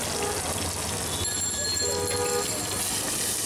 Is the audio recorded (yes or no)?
yes